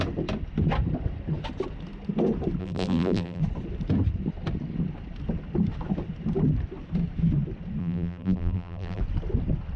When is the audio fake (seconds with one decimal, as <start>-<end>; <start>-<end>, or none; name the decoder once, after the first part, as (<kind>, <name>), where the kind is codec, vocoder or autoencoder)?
2.6-3.4 (vocoder, BigVGAN v2); 7.8-9.0